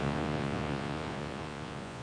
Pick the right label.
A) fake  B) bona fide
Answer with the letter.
A